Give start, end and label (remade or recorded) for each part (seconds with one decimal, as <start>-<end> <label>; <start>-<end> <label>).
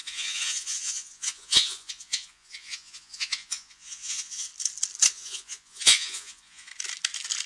0.0-4.5 remade; 4.5-5.1 recorded; 5.1-6.7 remade; 6.7-7.5 recorded